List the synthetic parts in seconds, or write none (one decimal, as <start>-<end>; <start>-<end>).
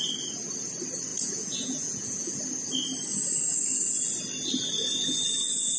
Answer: 1.1-2.4